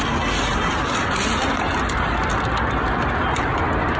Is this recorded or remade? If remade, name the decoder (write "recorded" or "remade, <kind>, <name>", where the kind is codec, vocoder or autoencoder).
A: recorded